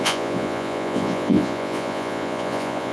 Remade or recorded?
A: remade